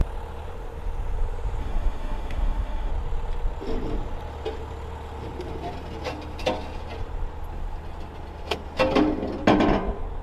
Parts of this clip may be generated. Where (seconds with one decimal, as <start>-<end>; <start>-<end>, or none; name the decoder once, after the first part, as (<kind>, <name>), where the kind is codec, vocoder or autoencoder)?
1.6-2.9 (autoencoder, DAC-VAE)